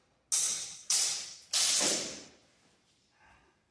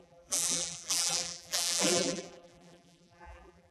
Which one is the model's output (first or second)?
second